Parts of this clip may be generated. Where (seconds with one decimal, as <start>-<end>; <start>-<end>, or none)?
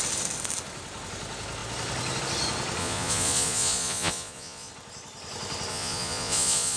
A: 2.8-4.7; 5.7-6.8